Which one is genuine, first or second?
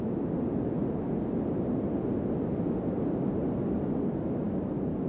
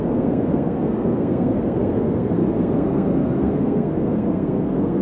first